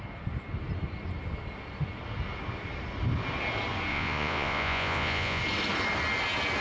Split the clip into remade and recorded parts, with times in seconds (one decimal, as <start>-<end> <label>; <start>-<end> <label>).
0.0-3.9 recorded; 3.9-5.4 remade; 5.4-6.6 recorded